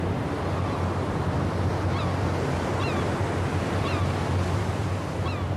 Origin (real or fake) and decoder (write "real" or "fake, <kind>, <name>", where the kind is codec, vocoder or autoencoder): real